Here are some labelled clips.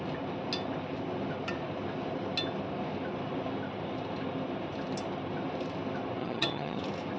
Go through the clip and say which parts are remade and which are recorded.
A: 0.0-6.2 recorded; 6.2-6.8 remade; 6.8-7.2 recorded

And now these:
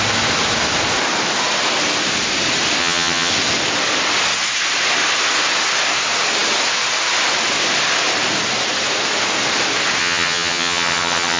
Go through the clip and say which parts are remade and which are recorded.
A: 0.0-2.8 recorded; 2.8-3.3 remade; 3.3-10.0 recorded; 10.0-11.4 remade